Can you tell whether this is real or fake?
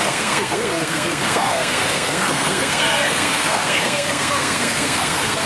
fake